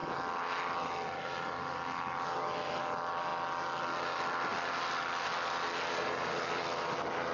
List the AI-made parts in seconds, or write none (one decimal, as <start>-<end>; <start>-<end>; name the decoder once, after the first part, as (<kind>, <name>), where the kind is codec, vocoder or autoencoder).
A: none